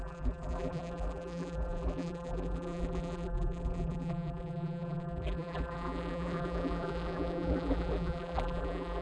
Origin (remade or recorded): remade